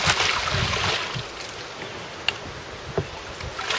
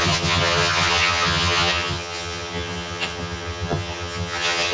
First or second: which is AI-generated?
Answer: second